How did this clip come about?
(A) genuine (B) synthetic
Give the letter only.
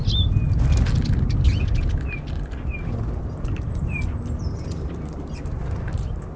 A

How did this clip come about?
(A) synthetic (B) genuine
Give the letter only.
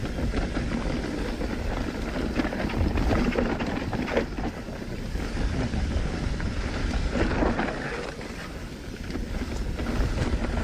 B